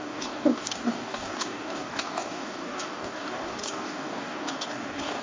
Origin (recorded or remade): remade